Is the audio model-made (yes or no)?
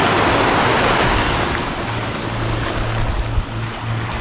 no